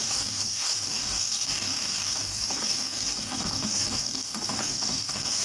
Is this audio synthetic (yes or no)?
yes